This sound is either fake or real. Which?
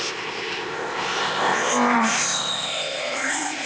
fake